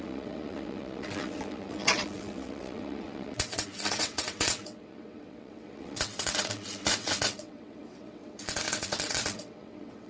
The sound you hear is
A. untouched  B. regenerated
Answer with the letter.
B